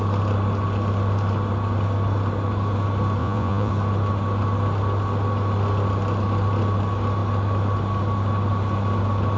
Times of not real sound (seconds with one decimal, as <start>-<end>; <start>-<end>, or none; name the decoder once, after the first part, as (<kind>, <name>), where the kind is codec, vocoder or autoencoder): 3.2-3.7 (vocoder, Vocos)